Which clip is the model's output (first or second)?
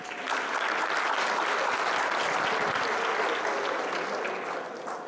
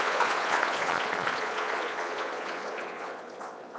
second